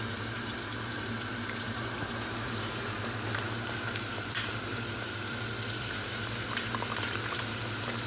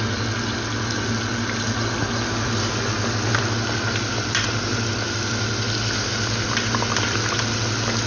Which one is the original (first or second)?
second